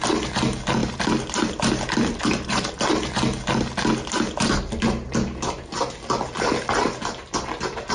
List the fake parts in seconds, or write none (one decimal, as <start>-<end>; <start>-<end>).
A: 0.8-2.7